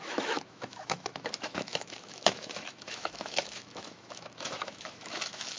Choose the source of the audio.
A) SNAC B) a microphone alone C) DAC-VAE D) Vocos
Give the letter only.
C